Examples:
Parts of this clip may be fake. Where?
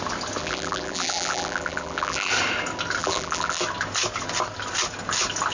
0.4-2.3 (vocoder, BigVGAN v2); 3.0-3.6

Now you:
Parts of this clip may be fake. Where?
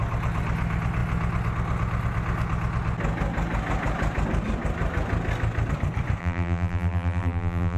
6.2-7.8 (vocoder, BigVGAN v2)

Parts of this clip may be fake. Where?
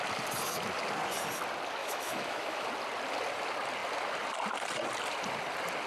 1.8-2.7 (autoencoder, DAC-VAE)